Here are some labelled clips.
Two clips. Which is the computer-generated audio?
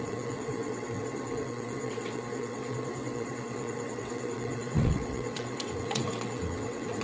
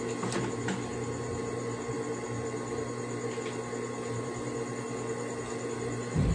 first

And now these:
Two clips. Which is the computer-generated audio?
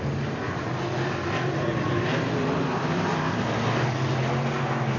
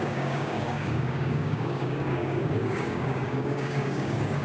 second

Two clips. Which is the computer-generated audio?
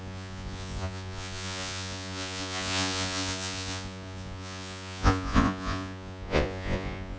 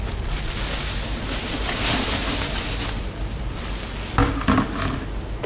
first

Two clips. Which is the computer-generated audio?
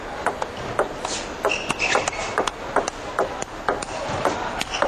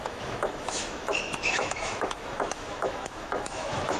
second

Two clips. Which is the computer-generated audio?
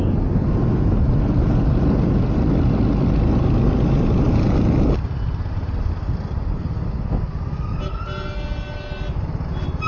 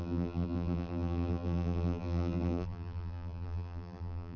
second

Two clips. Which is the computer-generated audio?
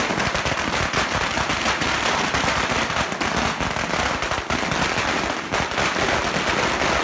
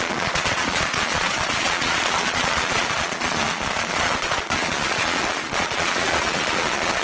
second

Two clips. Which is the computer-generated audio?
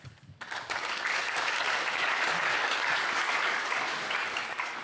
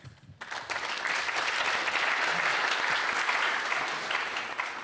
first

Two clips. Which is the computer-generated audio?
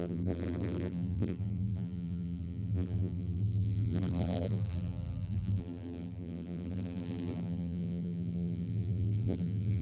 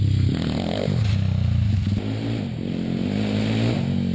first